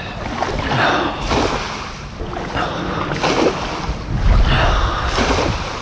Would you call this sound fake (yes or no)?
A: no